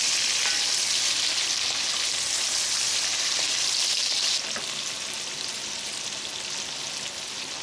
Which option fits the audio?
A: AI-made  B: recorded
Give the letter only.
B